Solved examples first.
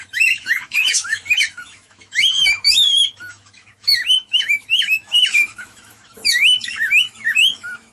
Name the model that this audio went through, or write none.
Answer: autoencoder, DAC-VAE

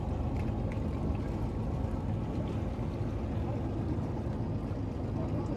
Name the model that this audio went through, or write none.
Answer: none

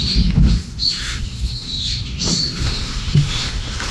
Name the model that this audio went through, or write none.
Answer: autoencoder, DAC-VAE